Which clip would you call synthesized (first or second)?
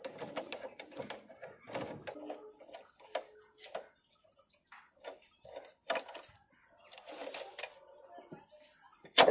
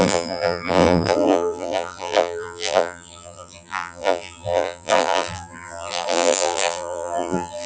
second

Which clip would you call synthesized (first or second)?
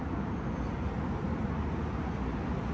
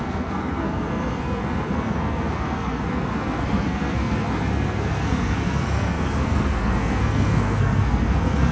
second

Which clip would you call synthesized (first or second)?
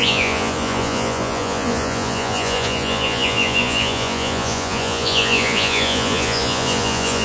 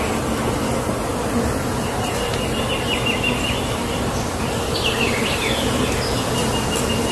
first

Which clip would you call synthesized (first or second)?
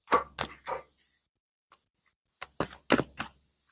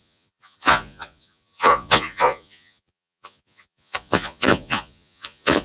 second